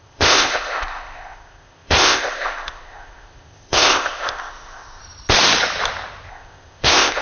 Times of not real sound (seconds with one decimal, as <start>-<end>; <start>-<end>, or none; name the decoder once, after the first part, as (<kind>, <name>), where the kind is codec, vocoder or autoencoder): 0.0-5.0 (codec, ZipCodec); 6.3-7.2